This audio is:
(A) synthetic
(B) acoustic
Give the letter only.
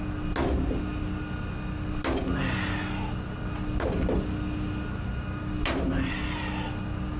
B